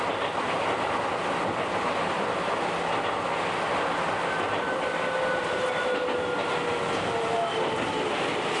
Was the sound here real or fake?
real